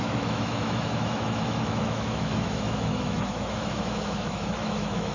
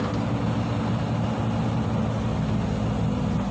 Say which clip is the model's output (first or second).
first